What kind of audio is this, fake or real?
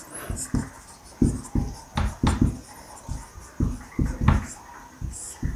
real